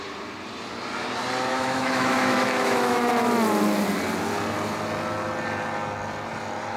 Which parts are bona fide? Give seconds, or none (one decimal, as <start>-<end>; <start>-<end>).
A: 0.0-1.5; 3.1-6.8